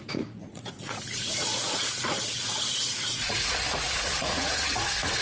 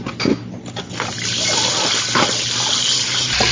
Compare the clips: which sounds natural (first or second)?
second